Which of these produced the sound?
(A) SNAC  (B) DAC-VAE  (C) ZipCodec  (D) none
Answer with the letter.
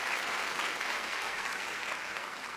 A